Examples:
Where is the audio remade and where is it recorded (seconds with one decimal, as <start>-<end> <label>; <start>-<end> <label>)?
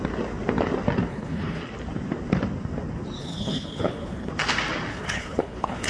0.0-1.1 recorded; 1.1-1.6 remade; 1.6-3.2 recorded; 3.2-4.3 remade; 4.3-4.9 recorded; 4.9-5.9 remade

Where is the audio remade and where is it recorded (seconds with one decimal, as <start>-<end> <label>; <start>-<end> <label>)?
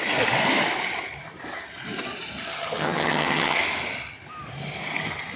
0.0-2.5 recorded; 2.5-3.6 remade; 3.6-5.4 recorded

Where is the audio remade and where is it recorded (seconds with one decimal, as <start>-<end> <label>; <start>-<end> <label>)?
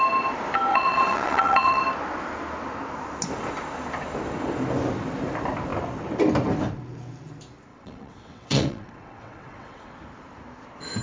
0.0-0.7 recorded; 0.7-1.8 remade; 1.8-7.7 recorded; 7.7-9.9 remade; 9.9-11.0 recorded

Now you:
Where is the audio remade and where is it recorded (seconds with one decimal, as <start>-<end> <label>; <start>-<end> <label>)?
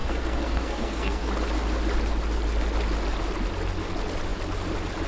0.0-1.3 remade; 1.3-5.1 recorded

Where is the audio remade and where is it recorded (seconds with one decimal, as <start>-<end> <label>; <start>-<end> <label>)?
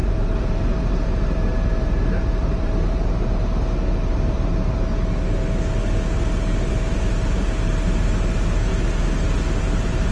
0.0-3.4 remade; 3.4-4.1 recorded; 4.1-4.9 remade; 4.9-6.7 recorded; 6.7-8.7 remade; 8.7-9.6 recorded; 9.6-10.1 remade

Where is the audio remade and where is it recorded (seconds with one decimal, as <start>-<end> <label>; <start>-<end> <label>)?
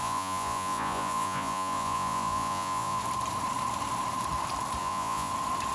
0.0-3.0 remade; 3.0-4.8 recorded; 4.8-5.3 remade; 5.3-5.7 recorded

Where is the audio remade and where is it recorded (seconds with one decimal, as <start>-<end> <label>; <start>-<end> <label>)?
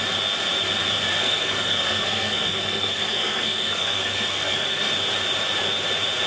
0.0-1.1 recorded; 1.1-4.9 remade; 4.9-6.3 recorded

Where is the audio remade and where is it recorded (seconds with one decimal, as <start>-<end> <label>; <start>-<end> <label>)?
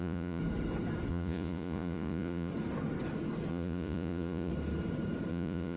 0.0-0.4 remade; 0.4-1.1 recorded; 1.1-2.5 remade; 2.5-3.5 recorded; 3.5-4.5 remade; 4.5-5.3 recorded; 5.3-5.8 remade